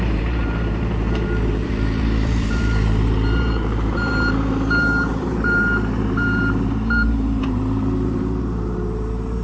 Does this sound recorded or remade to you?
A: remade